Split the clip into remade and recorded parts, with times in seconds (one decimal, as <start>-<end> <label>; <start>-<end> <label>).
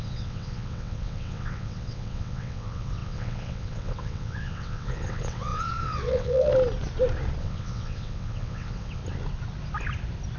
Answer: 0.0-6.5 remade; 6.5-7.4 recorded; 7.4-9.0 remade; 9.0-10.4 recorded